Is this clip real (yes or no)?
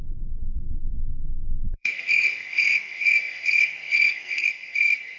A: no